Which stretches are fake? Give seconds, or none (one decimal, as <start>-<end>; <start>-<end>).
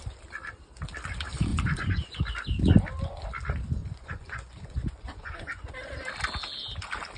1.5-2.2; 3.8-5.7